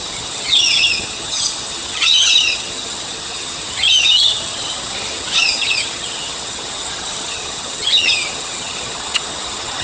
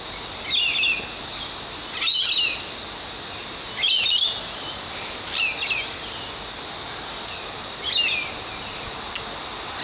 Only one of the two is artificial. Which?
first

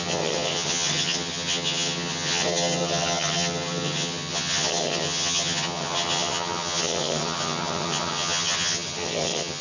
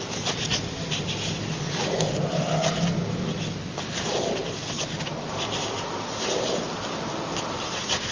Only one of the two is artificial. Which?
first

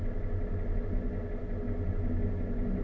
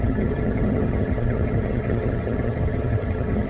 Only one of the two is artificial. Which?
second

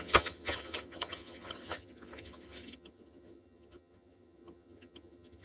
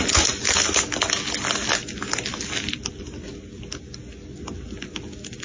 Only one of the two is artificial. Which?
first